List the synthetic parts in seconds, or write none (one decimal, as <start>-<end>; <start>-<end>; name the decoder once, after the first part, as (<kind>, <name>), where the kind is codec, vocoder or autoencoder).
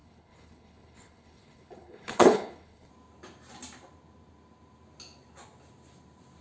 0.0-2.9 (codec, HILCodec)